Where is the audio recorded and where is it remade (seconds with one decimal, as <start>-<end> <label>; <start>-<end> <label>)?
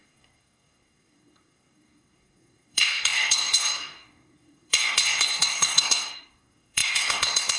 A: 0.0-7.6 remade